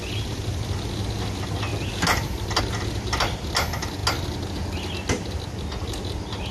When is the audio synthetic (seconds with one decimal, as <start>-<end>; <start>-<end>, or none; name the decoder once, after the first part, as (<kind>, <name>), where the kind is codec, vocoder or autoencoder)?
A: none